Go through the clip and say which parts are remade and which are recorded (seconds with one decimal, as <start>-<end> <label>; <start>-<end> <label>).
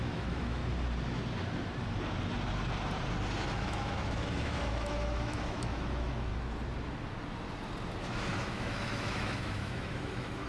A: 0.0-0.6 remade; 0.6-3.5 recorded; 3.5-6.3 remade; 6.3-8.0 recorded; 8.0-10.5 remade